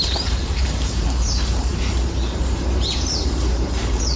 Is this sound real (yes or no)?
no